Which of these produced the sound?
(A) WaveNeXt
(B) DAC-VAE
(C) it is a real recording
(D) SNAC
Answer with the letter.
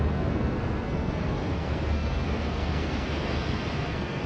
D